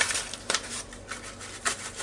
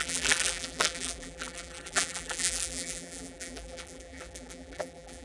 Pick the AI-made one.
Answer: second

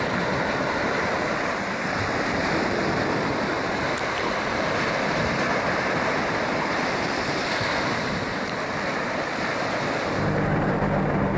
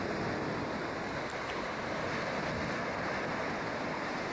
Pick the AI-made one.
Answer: first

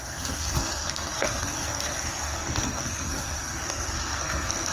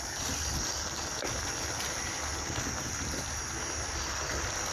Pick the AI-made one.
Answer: first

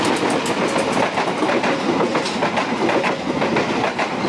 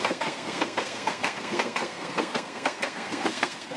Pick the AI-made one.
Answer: second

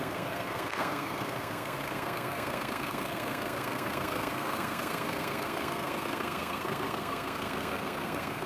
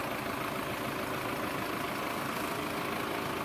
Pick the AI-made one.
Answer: first